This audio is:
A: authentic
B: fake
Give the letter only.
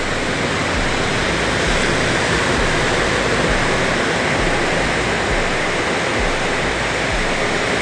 A